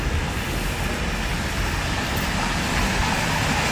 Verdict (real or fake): real